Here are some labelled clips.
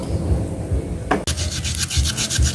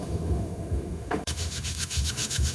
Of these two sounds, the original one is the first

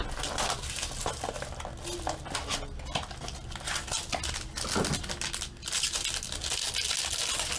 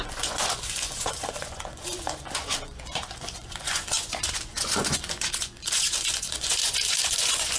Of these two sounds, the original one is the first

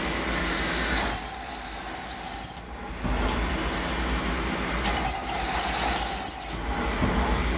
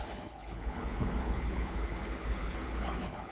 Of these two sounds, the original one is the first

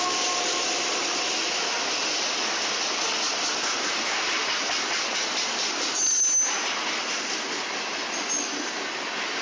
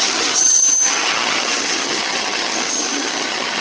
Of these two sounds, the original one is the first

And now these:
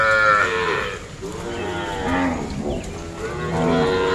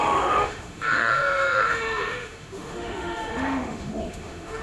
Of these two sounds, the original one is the first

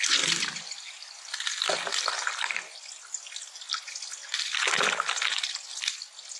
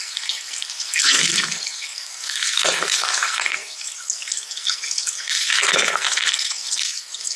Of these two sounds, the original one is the first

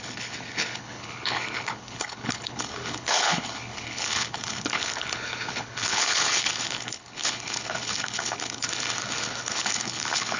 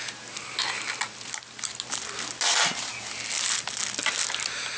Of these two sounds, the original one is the second